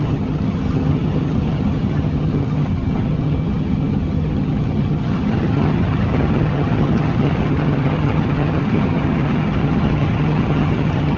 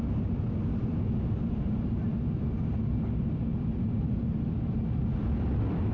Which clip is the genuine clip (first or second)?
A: second